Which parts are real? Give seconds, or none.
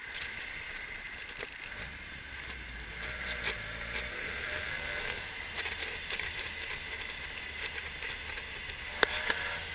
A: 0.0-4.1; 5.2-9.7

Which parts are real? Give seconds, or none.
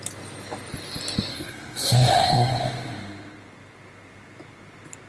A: 0.0-1.3; 2.5-5.1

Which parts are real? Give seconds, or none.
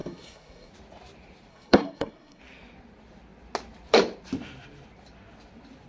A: 0.7-1.5; 2.4-5.9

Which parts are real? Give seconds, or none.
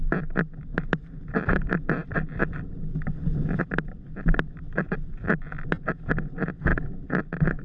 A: 0.0-0.7; 1.7-7.6